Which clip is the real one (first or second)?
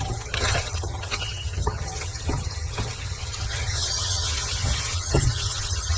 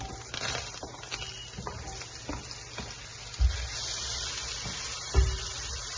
second